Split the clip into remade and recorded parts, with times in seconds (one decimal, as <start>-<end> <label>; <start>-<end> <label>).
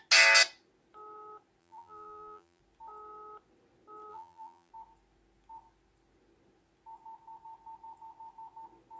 0.0-1.6 recorded; 1.6-2.6 remade; 2.6-4.1 recorded; 4.1-4.7 remade; 4.7-9.0 recorded